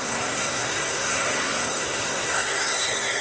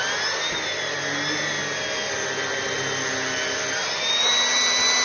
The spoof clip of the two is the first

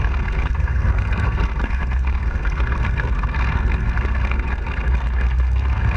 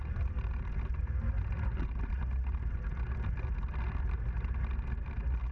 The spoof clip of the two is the first